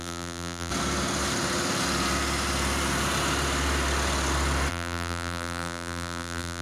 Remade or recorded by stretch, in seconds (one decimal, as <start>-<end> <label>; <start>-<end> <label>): 0.0-0.7 remade; 0.7-4.7 recorded; 4.7-6.6 remade